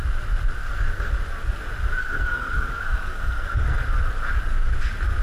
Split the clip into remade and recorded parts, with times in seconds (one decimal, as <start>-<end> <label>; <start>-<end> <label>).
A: 0.0-0.6 recorded; 0.6-1.1 remade; 1.1-2.0 recorded; 2.0-3.8 remade; 3.8-5.2 recorded